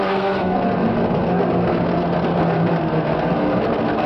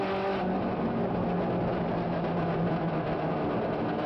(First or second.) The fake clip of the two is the first